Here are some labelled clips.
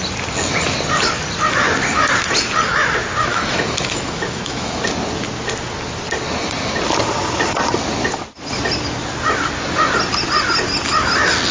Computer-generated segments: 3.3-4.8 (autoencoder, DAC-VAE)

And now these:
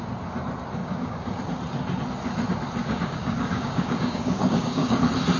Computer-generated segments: 0.8-1.4 (codec, DAC); 2.8-5.0

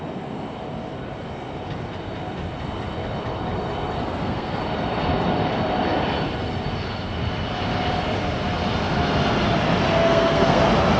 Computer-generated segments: 4.0-4.6 (codec, SNAC); 10.0-10.6

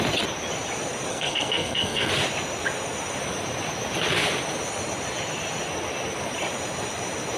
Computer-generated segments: 1.1-2.1 (codec, SNAC)

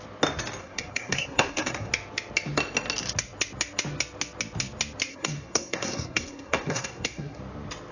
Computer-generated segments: 0.6-1.9 (codec, SNAC); 5.1-7.4

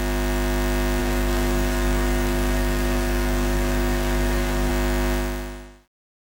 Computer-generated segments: 1.0-4.7 (codec, DAC)

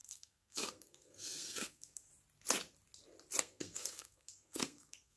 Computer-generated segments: 0.0-2.1 (codec, SNAC); 3.4-5.2

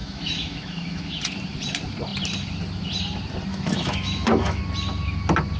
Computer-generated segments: 0.0-1.2 (autoencoder, DAC-VAE); 3.5-4.6